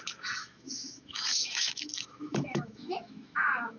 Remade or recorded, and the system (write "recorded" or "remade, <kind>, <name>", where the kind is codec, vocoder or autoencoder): remade, autoencoder, DAC-VAE